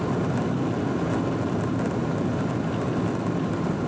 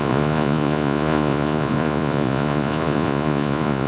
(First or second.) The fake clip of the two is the second